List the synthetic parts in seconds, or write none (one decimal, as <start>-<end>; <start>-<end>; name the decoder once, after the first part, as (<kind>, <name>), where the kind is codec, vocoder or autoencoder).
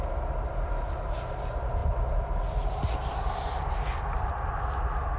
none